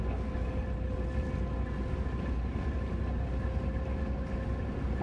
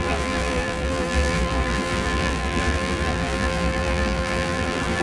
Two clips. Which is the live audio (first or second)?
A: first